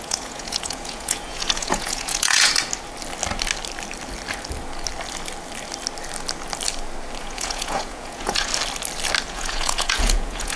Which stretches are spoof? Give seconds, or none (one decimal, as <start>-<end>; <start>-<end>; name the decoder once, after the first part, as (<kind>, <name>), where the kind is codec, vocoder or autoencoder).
0.0-2.5 (vocoder, Vocos); 7.2-8.5; 9.3-10.6